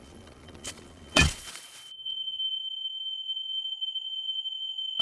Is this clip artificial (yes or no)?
yes